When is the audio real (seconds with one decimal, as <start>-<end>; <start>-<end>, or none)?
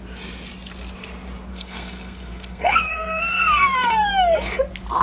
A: 0.0-1.5; 4.1-5.0